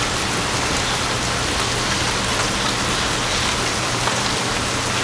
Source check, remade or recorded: recorded